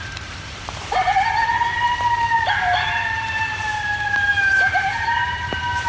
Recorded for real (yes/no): no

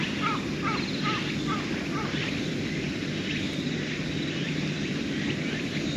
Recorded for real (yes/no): yes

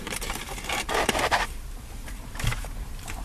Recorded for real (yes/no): no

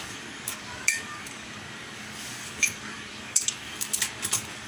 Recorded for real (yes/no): no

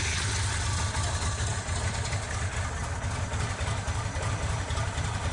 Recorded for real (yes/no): yes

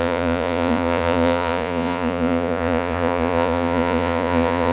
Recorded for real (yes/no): no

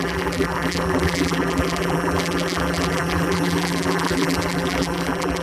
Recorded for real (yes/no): no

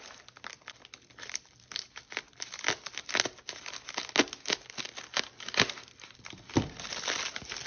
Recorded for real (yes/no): yes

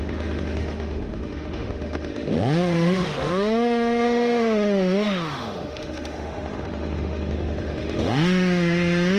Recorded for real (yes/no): no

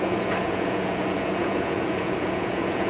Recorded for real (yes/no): no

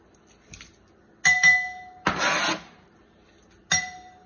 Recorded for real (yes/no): yes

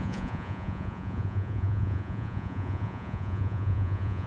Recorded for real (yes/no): no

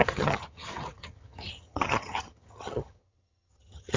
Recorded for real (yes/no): no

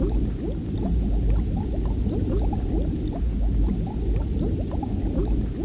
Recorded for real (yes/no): yes